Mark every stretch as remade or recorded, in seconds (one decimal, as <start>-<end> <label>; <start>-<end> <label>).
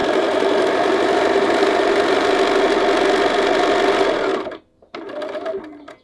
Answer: 0.0-2.3 remade; 2.3-6.0 recorded